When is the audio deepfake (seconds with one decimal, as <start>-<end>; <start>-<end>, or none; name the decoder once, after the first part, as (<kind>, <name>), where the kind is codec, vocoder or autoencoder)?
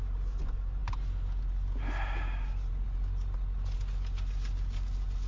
none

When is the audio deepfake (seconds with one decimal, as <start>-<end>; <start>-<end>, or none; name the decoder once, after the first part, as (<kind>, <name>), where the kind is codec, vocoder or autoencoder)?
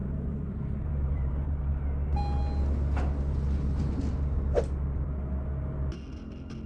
0.0-1.6 (vocoder, BigVGAN v2)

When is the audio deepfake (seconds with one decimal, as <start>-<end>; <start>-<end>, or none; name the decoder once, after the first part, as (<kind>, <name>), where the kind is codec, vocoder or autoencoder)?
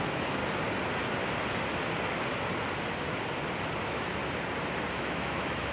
0.0-0.4 (autoencoder, DAC-VAE); 3.8-4.2; 4.9-5.7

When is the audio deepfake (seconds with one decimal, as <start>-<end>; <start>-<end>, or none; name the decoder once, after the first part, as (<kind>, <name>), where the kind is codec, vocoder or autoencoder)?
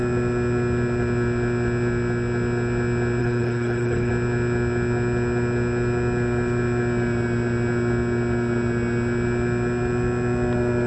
3.2-4.1 (codec, HILCodec)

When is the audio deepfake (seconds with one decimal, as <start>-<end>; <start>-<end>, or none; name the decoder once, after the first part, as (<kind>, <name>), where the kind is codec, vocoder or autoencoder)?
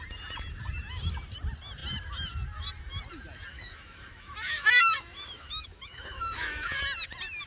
3.5-6.8 (autoencoder, DAC-VAE)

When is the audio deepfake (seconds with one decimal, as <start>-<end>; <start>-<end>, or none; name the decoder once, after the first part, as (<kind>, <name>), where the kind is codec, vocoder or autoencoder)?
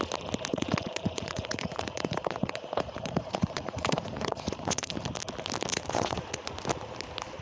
0.5-4.9 (vocoder, Vocos); 5.7-6.5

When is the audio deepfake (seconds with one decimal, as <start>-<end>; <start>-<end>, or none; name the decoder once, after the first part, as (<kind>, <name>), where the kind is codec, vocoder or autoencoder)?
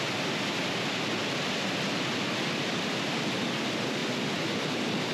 none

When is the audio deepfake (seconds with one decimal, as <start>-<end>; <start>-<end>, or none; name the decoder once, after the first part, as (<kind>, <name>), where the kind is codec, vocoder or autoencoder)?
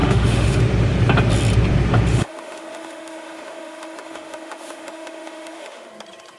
0.0-0.6 (autoencoder, DAC-VAE); 2.1-5.9